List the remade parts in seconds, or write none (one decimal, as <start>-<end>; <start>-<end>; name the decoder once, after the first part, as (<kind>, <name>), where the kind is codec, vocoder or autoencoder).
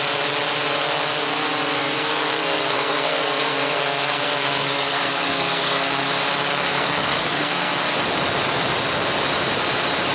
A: 1.8-6.1 (codec, SNAC); 6.5-7.7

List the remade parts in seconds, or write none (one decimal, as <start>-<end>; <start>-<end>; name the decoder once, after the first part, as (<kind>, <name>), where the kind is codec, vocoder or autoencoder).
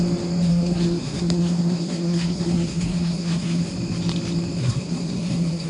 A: 0.5-3.6 (codec, SNAC); 4.6-5.7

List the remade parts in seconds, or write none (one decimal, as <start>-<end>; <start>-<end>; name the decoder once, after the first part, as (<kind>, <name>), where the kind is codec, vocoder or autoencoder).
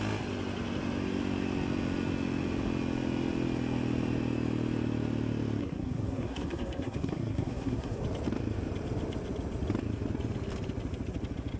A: 5.6-8.0 (codec, SNAC)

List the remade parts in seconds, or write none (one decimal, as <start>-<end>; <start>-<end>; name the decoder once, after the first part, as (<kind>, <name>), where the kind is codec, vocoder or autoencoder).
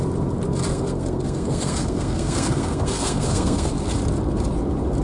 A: 0.7-3.7 (codec, SNAC)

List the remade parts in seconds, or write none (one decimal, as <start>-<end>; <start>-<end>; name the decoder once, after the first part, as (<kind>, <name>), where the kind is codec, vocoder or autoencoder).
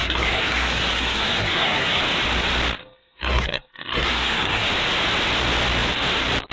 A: 0.0-2.0 (codec, SNAC); 2.8-4.7